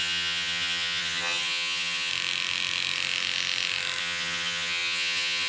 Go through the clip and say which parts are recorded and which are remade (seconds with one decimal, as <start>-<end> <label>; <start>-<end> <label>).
0.0-2.1 remade; 2.1-4.0 recorded; 4.0-5.5 remade